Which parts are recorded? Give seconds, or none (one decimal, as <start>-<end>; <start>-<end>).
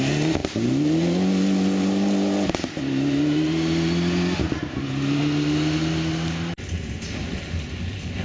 0.0-8.2